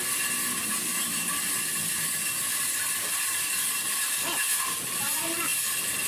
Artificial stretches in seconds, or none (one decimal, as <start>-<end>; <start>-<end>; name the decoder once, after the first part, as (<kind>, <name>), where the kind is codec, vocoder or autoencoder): none